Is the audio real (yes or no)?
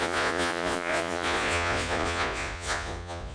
no